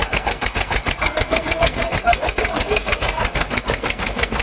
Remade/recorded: remade